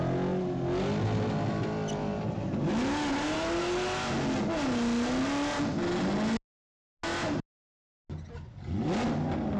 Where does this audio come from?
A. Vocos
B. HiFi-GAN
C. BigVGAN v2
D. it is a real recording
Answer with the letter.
D